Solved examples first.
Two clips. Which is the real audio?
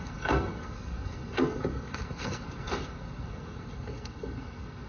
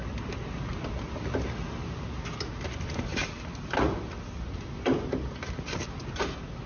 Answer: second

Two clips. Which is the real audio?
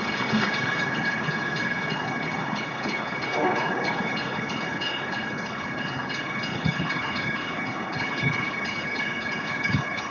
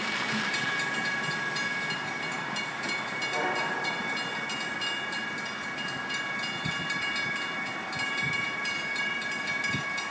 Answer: second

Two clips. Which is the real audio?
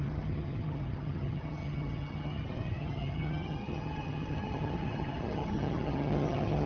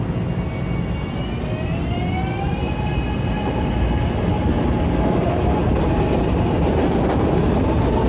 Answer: second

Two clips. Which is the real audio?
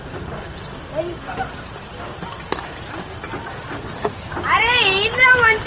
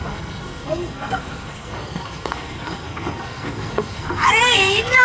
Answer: first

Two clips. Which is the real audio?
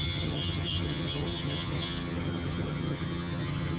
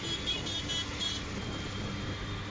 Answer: second